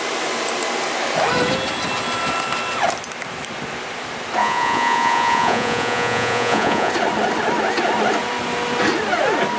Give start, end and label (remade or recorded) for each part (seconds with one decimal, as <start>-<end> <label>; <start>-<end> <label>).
0.0-4.4 recorded; 4.4-6.9 remade; 6.9-9.6 recorded